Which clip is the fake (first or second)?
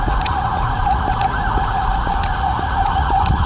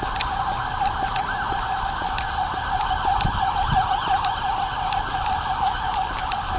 first